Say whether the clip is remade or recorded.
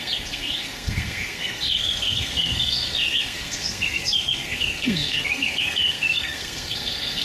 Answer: remade